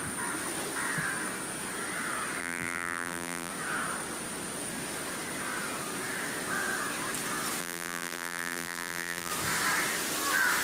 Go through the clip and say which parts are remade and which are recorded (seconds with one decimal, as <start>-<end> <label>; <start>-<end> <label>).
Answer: 0.0-2.4 recorded; 2.4-3.5 remade; 3.5-7.6 recorded; 7.6-9.3 remade; 9.3-10.6 recorded